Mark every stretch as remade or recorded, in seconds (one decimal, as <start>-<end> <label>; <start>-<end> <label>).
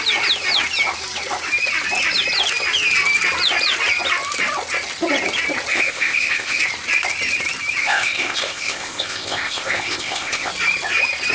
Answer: 0.0-5.7 recorded; 5.7-6.6 remade; 6.6-7.8 recorded; 7.8-10.5 remade; 10.5-11.3 recorded